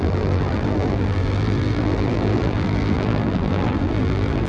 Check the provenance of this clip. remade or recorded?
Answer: remade